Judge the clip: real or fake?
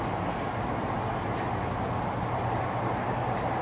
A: real